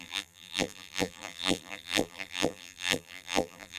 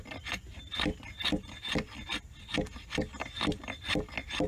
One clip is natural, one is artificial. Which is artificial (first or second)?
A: first